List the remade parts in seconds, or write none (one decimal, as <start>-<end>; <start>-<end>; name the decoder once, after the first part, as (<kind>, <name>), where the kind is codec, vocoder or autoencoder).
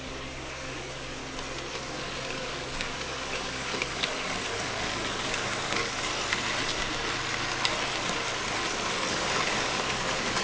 0.0-1.2 (codec, DAC); 1.7-6.1; 9.1-10.4